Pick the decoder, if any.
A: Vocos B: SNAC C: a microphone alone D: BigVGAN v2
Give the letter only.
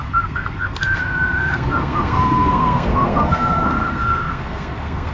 B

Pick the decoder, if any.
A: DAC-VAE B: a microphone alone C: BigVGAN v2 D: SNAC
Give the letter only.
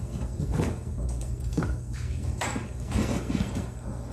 D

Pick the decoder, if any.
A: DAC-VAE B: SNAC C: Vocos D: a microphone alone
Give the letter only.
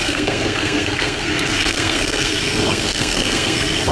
B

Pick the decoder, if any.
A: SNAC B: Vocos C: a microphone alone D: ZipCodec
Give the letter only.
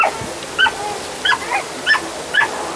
C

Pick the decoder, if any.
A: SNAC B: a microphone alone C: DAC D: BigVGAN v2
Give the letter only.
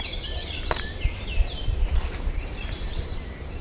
D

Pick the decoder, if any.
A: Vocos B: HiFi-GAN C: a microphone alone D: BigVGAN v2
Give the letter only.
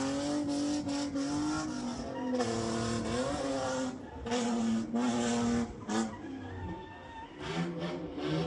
C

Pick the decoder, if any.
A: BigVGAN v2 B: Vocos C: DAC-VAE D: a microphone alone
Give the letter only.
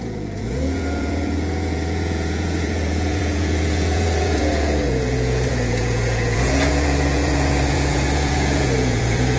B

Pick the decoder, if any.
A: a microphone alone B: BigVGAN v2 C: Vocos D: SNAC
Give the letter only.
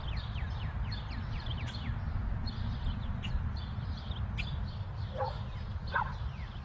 A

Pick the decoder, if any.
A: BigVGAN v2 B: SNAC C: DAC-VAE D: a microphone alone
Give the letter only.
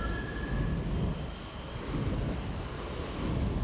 D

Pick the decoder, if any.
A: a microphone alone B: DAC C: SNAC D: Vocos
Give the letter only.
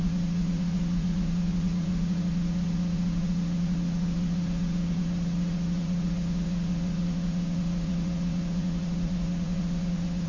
D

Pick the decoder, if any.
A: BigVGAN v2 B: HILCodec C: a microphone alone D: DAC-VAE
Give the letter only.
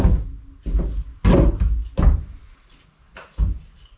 C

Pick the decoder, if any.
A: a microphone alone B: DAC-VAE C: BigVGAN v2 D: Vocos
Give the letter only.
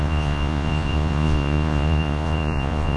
D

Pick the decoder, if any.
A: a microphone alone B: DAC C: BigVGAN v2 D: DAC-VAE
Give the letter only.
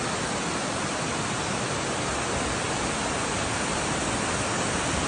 A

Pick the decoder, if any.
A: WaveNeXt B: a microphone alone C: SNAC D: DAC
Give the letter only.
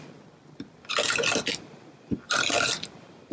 B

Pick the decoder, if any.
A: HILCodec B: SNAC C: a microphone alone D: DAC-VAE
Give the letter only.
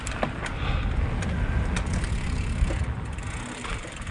C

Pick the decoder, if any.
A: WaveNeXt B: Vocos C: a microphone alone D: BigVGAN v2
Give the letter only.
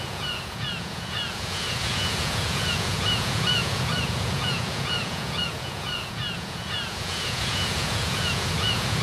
B